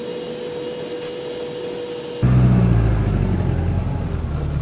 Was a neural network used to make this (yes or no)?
no